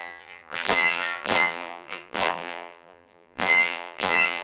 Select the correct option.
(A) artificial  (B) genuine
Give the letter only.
A